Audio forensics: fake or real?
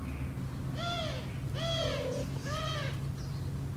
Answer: real